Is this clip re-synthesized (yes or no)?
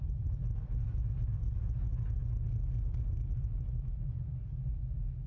no